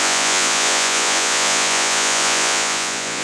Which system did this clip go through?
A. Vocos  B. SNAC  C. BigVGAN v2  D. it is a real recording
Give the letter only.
A